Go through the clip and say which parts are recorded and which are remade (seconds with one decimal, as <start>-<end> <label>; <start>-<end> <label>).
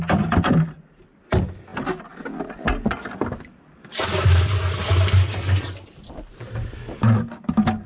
0.0-7.9 recorded